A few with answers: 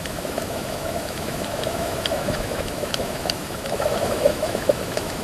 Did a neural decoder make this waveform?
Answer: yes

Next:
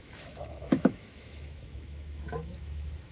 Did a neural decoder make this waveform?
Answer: yes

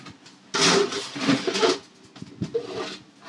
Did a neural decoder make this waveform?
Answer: no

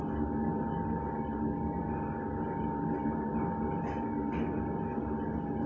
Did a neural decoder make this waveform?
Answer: no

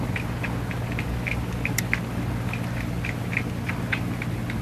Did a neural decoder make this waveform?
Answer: no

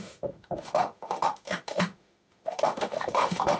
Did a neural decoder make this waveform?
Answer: yes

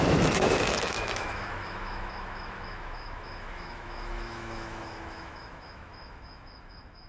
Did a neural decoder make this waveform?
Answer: yes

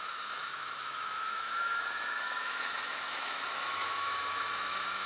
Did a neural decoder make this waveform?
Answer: yes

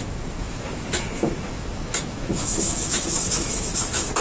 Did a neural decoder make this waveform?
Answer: yes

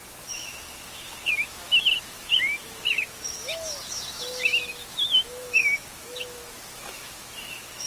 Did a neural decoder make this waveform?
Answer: yes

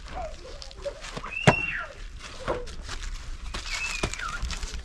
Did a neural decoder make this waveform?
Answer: no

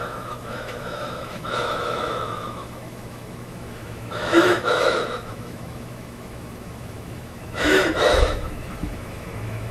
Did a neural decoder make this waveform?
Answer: yes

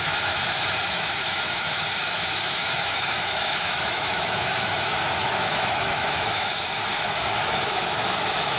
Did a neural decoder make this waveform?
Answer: yes